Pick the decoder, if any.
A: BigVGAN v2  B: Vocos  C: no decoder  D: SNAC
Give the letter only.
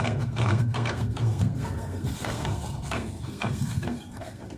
D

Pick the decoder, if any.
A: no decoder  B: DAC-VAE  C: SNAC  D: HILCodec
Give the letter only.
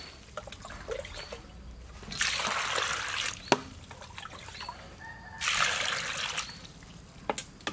A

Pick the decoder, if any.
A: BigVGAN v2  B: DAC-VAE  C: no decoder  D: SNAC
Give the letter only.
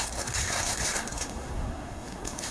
D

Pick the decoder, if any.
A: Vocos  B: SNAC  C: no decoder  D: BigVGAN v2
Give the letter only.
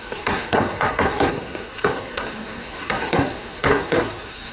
B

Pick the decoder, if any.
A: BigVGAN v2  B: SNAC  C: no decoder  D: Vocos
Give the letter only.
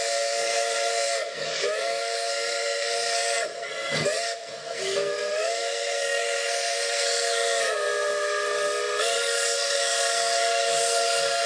B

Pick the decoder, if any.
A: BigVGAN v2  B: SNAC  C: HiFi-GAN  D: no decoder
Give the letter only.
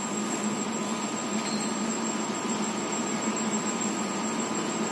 D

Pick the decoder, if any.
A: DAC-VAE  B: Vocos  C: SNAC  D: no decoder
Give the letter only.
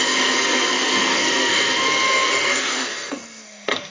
C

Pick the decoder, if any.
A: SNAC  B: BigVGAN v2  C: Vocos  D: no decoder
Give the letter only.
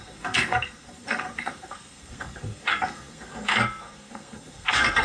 A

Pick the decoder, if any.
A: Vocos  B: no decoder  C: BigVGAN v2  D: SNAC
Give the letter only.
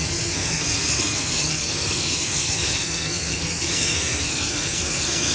D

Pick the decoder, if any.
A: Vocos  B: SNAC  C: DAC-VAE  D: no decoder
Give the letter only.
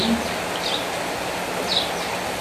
D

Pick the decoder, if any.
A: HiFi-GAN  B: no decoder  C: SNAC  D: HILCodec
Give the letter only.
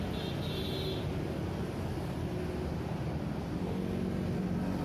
B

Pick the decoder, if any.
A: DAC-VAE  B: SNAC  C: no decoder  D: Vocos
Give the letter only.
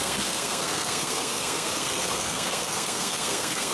B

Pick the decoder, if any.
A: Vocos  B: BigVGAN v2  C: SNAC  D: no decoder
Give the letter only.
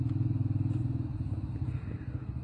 D